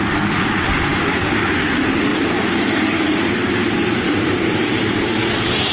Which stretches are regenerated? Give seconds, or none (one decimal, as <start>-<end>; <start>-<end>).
2.1-5.1